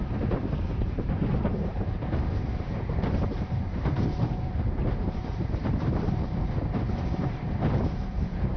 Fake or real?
fake